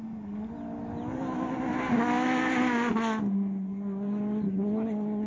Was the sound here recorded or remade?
recorded